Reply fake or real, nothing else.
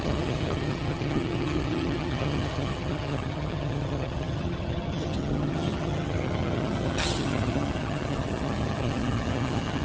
fake